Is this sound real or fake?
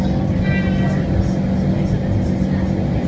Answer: real